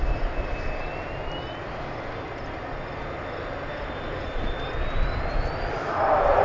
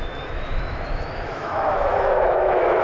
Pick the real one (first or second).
first